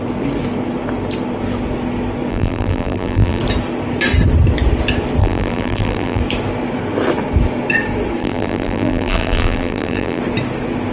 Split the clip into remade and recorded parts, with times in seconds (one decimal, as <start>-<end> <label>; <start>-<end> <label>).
0.0-2.3 recorded; 2.3-3.4 remade; 3.4-5.2 recorded; 5.2-6.2 remade; 6.2-8.2 recorded; 8.2-10.2 remade; 10.2-10.9 recorded